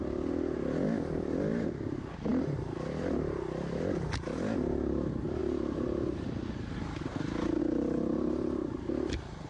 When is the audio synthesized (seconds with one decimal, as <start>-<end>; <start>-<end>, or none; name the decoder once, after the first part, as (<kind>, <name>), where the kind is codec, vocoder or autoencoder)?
none